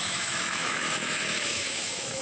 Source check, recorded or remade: remade